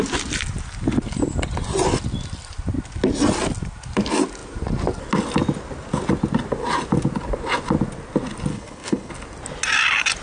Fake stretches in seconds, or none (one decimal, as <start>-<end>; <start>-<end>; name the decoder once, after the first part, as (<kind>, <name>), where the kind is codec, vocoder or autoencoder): 8.5-9.1 (codec, HILCodec)